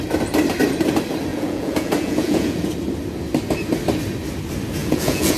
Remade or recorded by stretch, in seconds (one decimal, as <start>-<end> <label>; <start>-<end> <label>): 0.0-1.3 recorded; 1.3-2.7 remade; 2.7-4.8 recorded; 4.8-5.4 remade